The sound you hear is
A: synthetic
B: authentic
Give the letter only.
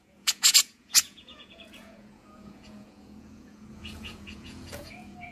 A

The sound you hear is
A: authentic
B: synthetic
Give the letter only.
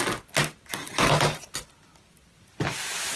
A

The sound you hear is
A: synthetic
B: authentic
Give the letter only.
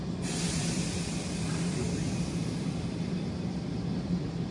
B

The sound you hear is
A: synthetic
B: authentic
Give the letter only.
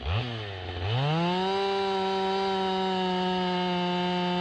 B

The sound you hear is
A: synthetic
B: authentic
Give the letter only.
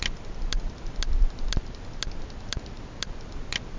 B